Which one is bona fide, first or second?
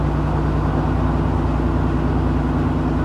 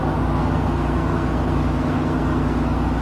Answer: first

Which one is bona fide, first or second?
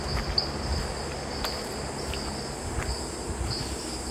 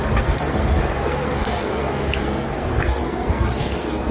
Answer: first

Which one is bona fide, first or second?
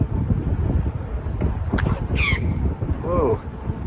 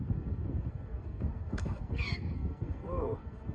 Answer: first